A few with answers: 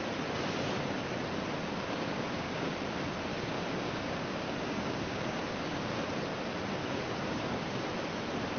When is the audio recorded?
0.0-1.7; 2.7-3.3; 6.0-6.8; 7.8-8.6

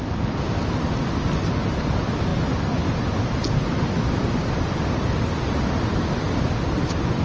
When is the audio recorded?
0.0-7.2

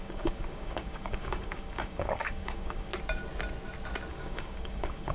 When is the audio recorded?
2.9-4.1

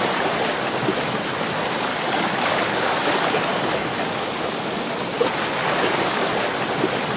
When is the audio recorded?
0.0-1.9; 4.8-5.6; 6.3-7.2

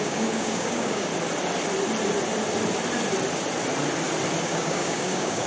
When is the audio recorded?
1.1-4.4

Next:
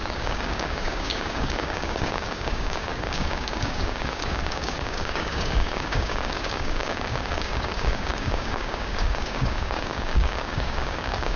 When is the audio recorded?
none